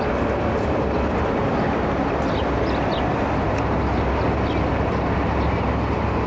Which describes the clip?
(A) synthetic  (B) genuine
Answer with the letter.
B